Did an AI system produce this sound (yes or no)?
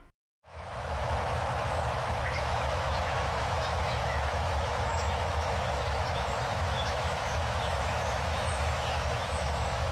yes